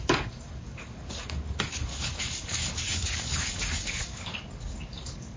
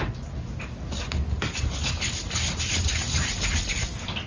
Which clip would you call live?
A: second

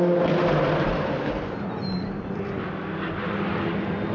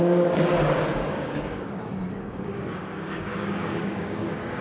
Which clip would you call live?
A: first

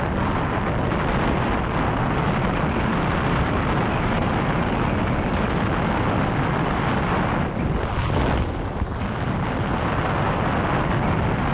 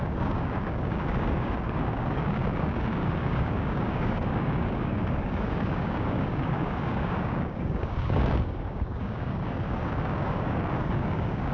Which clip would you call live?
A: first